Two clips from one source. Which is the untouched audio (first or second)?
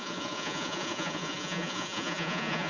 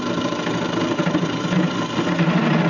second